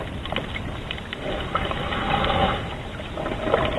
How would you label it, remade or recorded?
recorded